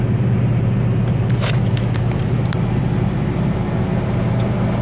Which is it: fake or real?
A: real